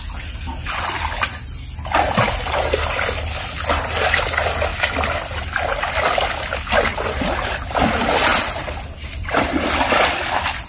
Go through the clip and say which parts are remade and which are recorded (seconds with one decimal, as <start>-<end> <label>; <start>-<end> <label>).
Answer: 0.0-6.9 recorded; 6.9-7.5 remade; 7.5-8.3 recorded; 8.3-9.7 remade; 9.7-10.7 recorded